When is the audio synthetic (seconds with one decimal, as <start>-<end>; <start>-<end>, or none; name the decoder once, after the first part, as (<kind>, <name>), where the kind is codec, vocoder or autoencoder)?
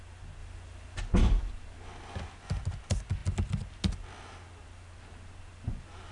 none